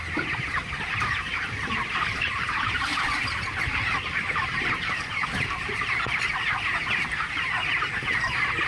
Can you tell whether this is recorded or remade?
recorded